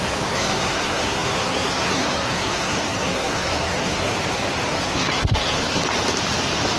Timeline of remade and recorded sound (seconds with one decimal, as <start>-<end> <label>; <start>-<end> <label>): 0.0-4.1 remade; 4.1-4.7 recorded; 4.7-5.8 remade; 5.8-6.8 recorded